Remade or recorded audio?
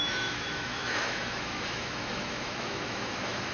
remade